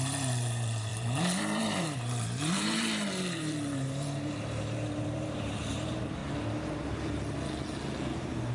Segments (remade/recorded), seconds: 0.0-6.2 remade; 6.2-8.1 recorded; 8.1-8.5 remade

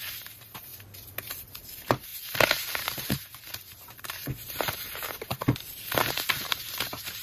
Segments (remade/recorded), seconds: 0.0-0.7 remade; 0.7-1.4 recorded; 1.4-7.2 remade